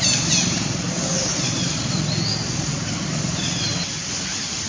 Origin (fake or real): fake